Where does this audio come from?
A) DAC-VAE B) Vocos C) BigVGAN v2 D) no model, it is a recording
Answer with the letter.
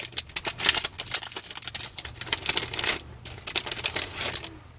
D